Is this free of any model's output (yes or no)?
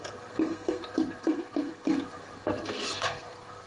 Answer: no